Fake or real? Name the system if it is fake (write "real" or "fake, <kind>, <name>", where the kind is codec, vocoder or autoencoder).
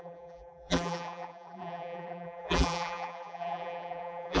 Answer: fake, vocoder, BigVGAN v2